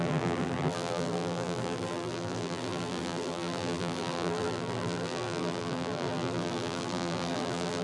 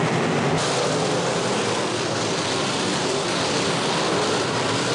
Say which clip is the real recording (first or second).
second